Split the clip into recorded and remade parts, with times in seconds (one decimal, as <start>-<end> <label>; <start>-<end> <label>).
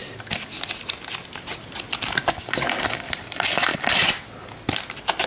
0.0-5.3 recorded